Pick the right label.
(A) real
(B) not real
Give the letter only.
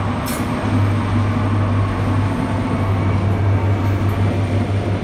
A